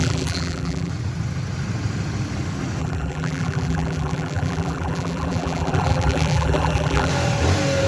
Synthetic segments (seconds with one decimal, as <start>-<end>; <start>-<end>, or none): 0.0-0.9; 2.8-7.1